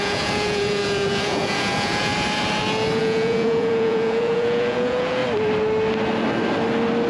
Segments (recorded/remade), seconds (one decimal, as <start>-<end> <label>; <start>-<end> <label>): 0.0-2.1 remade; 2.1-3.0 recorded; 3.0-5.2 remade; 5.2-7.1 recorded